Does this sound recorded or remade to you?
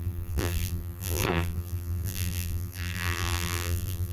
remade